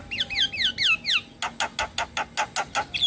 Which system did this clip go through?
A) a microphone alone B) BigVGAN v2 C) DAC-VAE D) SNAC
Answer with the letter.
A